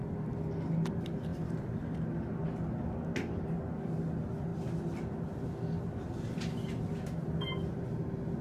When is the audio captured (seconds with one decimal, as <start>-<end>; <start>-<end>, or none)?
0.0-8.4